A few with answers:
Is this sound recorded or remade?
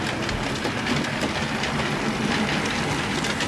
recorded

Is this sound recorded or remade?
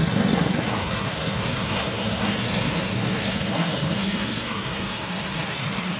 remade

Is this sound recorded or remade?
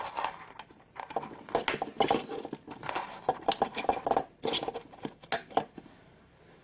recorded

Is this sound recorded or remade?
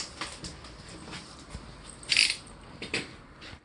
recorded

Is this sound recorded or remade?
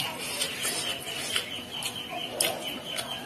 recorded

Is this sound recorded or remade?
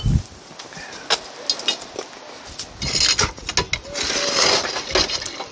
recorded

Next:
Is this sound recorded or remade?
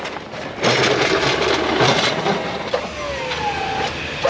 recorded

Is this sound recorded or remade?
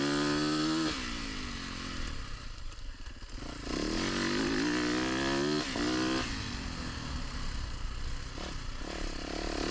recorded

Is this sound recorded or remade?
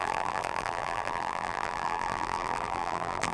remade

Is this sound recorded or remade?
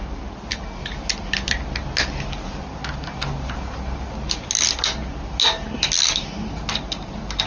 recorded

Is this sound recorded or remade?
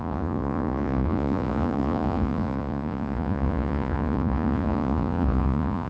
remade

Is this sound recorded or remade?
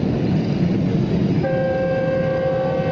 recorded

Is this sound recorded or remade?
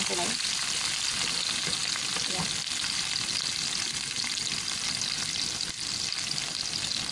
recorded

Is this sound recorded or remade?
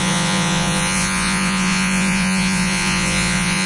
remade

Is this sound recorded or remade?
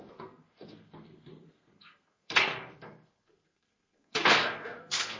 remade